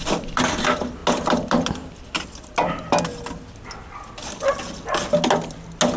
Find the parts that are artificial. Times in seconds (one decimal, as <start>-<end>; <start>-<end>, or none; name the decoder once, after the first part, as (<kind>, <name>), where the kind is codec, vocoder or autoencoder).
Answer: none